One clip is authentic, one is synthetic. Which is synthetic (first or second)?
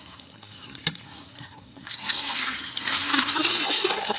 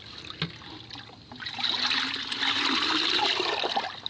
first